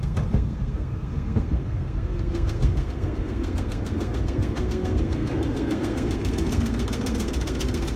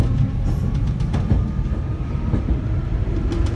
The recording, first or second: second